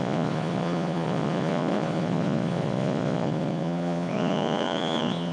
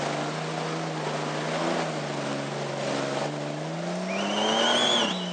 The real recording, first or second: second